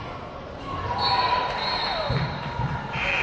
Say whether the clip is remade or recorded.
remade